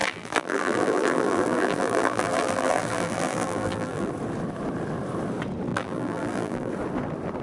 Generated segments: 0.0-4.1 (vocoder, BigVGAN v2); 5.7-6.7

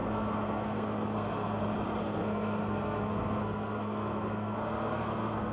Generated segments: 0.0-1.6 (codec, SNAC); 2.0-5.5

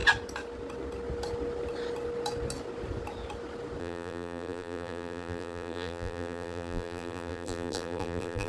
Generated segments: 3.8-8.5 (vocoder, BigVGAN v2)